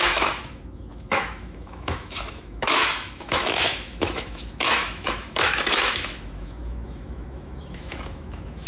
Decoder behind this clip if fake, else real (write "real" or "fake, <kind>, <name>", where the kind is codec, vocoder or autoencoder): fake, autoencoder, DAC-VAE